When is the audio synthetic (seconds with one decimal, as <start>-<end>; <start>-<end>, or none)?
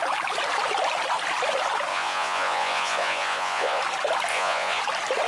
1.9-3.8; 4.3-4.8